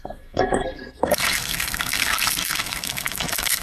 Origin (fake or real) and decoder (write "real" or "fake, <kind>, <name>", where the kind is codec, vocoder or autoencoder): fake, codec, SNAC